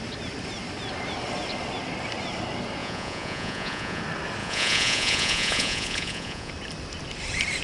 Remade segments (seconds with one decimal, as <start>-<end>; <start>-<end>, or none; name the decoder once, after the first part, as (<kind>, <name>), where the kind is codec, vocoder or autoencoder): 2.8-4.0 (vocoder, Vocos); 4.4-6.5